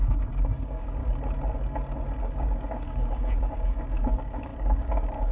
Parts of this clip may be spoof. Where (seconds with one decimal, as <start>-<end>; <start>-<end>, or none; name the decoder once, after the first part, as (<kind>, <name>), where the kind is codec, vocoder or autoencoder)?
0.0-1.0 (codec, DAC); 2.2-5.3